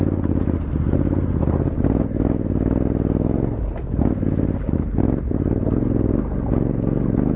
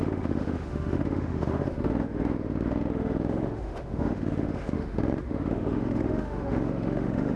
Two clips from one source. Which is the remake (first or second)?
second